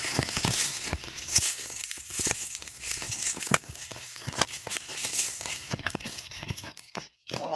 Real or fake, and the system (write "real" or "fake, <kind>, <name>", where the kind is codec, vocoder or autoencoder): fake, codec, SNAC